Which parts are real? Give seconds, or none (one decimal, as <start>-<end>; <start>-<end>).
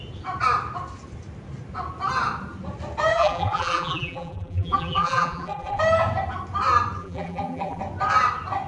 0.0-3.1; 5.8-7.0; 7.8-8.7